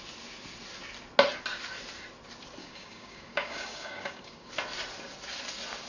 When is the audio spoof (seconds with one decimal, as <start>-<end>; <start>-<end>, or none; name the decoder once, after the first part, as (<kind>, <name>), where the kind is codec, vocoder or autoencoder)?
2.6-4.5 (codec, DAC)